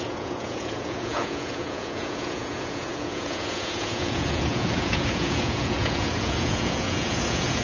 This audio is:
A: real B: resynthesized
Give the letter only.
B